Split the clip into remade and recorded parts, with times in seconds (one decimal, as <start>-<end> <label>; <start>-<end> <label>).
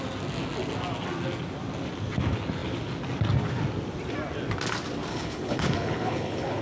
0.0-5.1 recorded; 5.1-6.6 remade